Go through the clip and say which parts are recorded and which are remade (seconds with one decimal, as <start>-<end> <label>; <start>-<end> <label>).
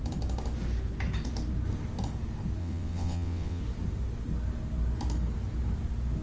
0.0-2.6 recorded; 2.6-3.6 remade; 3.6-6.2 recorded